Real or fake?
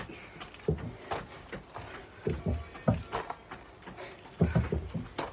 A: real